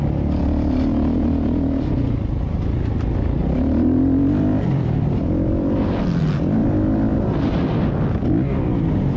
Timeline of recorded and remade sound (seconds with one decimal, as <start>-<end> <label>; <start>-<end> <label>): 0.0-3.4 recorded; 3.4-6.0 remade; 6.0-6.6 recorded; 6.6-7.3 remade; 7.3-9.2 recorded